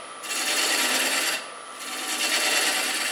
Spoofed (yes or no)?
yes